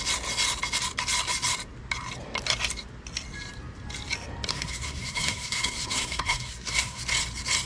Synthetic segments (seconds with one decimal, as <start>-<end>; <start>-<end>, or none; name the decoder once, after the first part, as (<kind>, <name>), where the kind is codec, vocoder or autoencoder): 4.5-7.0 (codec, SNAC)